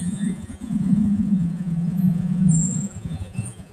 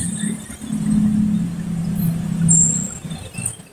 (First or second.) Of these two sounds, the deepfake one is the first